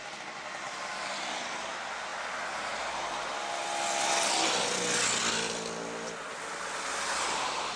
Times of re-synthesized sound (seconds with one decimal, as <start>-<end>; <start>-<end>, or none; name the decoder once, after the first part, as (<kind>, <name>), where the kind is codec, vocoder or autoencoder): none